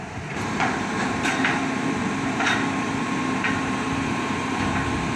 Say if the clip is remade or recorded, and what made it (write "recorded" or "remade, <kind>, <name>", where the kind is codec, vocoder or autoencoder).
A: remade, vocoder, BigVGAN v2